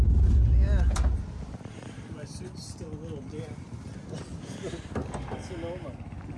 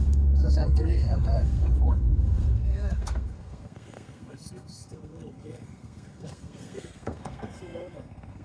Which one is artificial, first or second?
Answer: second